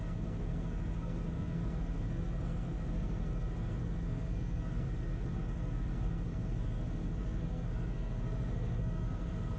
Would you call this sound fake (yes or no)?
yes